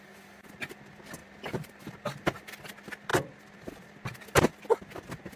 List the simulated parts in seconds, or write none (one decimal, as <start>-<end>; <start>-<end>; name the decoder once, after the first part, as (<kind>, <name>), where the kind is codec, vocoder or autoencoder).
1.2-1.9 (vocoder, BigVGAN v2)